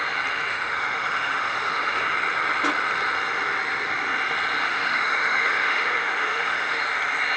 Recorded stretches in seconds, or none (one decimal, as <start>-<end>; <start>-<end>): 0.0-0.5; 2.0-4.6; 6.8-7.4